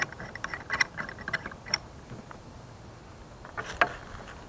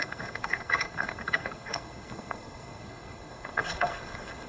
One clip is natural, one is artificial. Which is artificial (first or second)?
second